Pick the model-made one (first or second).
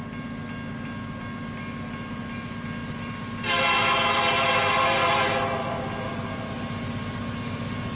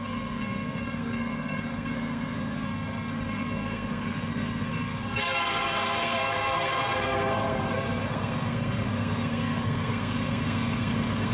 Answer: second